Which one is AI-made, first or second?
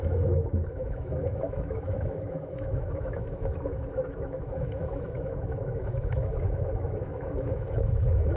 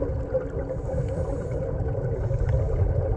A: first